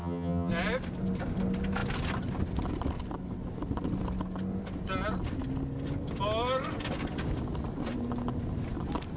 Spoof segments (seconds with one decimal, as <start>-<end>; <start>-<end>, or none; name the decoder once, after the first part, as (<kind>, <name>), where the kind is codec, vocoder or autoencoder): 0.0-0.5 (vocoder, HiFi-GAN)